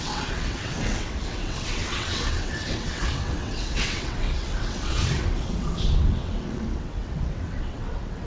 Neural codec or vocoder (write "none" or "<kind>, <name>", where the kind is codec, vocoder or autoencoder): vocoder, WaveNeXt